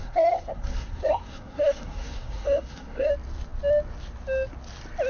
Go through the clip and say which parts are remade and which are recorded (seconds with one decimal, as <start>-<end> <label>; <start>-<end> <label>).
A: 0.0-3.1 remade; 3.1-5.1 recorded

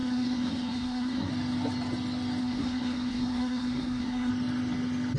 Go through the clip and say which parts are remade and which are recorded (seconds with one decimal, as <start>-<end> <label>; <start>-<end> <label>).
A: 0.0-1.3 remade; 1.3-2.4 recorded; 2.4-4.3 remade; 4.3-5.2 recorded